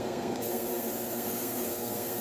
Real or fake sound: fake